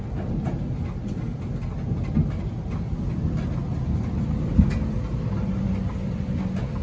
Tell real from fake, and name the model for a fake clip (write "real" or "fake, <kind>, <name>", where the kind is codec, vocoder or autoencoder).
real